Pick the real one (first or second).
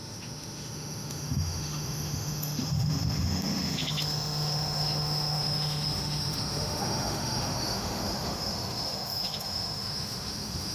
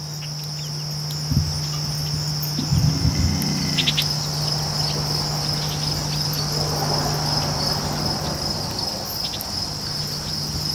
second